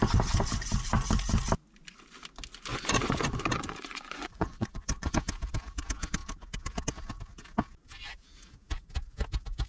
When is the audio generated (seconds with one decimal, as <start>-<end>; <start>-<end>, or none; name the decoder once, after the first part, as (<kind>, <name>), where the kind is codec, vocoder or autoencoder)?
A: 2.7-5.1 (vocoder, Vocos)